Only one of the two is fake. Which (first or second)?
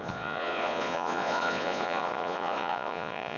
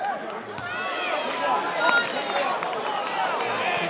first